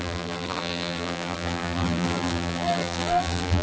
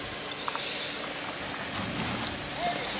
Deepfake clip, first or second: first